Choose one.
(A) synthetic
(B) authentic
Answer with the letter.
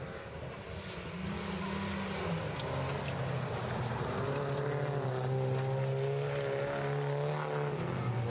B